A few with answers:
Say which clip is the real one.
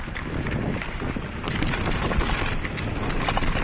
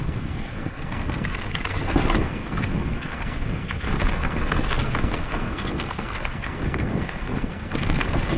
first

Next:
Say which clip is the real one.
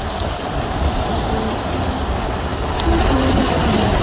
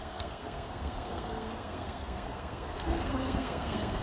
first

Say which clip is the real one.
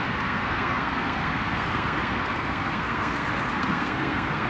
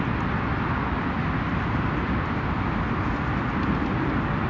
second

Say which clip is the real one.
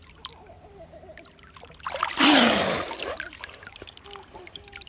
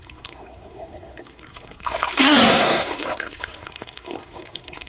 first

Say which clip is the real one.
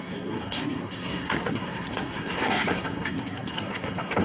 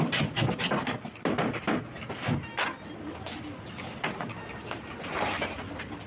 second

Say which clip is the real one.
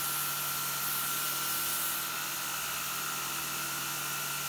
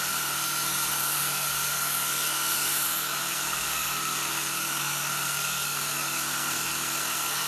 first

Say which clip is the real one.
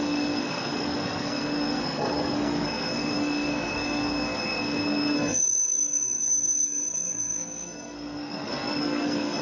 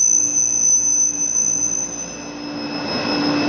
second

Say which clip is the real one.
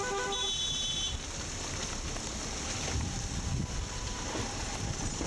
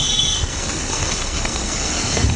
first